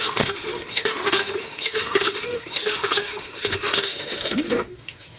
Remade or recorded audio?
remade